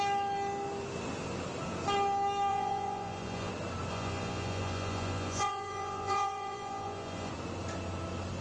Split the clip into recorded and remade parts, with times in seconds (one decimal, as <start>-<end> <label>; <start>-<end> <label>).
0.0-2.5 recorded; 2.5-3.5 remade; 3.5-3.9 recorded; 3.9-7.3 remade; 7.3-8.4 recorded